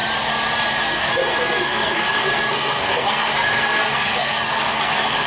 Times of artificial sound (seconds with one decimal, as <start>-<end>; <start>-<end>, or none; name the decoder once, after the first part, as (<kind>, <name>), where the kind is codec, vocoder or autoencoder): 0.8-5.3 (codec, SNAC)